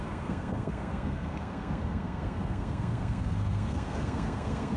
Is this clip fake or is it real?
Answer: fake